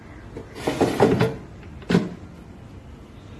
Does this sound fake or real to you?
real